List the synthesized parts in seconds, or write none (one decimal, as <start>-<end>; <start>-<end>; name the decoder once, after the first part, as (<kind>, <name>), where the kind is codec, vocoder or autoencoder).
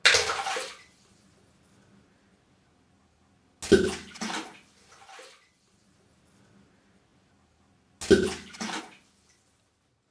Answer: none